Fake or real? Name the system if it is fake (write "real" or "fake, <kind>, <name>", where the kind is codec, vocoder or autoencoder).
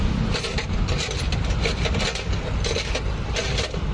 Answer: real